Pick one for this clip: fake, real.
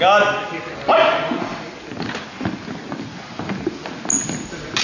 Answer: real